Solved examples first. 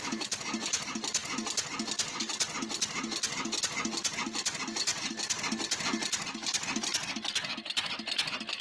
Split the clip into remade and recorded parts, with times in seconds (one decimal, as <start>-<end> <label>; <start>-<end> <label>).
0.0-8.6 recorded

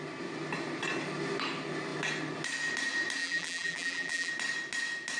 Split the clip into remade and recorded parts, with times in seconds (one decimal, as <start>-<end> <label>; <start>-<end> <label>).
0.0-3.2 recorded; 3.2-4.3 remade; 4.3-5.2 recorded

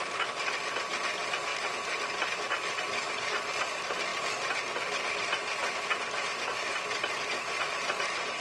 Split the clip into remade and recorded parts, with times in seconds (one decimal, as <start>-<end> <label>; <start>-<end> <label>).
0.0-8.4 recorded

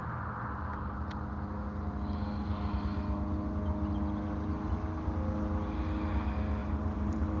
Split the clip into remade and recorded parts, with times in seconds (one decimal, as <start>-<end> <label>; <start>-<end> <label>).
0.0-6.6 recorded; 6.6-7.4 remade

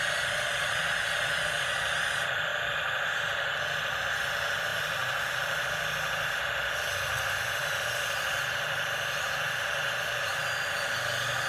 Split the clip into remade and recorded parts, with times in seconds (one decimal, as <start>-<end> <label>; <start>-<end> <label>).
0.0-4.7 recorded; 4.7-5.3 remade; 5.3-7.6 recorded; 7.6-10.4 remade; 10.4-11.5 recorded

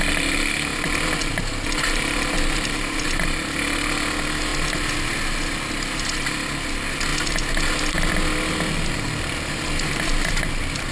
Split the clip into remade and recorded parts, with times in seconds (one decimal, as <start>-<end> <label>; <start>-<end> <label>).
0.0-10.9 recorded

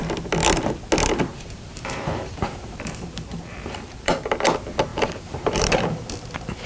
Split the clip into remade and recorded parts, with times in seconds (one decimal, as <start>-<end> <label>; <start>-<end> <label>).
0.0-1.3 recorded; 1.3-4.1 remade; 4.1-4.9 recorded; 4.9-5.9 remade; 5.9-6.7 recorded